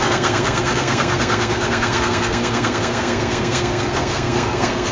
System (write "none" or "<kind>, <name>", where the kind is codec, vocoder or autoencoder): codec, SNAC